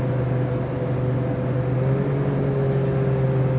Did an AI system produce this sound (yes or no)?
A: no